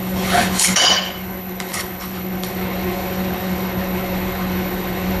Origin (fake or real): fake